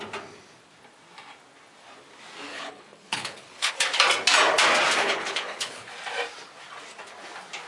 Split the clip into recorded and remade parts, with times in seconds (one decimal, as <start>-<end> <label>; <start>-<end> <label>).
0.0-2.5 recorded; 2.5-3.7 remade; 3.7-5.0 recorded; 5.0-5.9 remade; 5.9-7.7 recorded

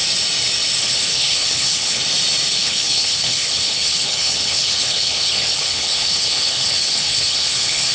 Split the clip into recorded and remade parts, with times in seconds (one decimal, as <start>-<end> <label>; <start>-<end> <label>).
0.0-0.8 recorded; 0.8-2.0 remade; 2.0-2.5 recorded; 2.5-7.9 remade

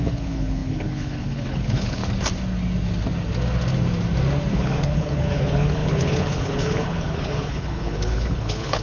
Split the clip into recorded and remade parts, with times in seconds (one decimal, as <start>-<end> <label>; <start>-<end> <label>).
0.0-2.0 remade; 2.0-4.5 recorded; 4.5-8.8 remade

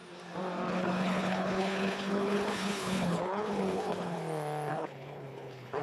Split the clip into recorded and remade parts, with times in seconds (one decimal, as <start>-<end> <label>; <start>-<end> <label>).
0.0-0.8 recorded; 0.8-4.2 remade; 4.2-4.7 recorded; 4.7-5.8 remade

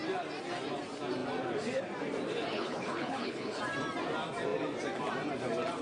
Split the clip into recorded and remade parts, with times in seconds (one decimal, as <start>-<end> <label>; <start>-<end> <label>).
0.0-2.5 recorded; 2.5-3.6 remade; 3.6-5.8 recorded

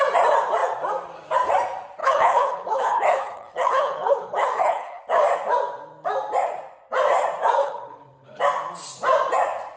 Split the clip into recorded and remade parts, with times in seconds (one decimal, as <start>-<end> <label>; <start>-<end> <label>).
0.0-2.0 recorded; 2.0-5.0 remade; 5.0-7.6 recorded; 7.6-8.4 remade; 8.4-9.8 recorded

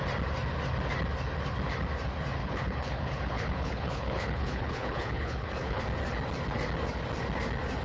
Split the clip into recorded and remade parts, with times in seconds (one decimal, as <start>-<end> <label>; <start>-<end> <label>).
0.0-2.4 recorded; 2.4-5.8 remade; 5.8-7.8 recorded